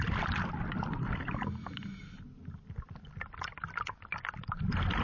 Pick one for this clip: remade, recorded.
recorded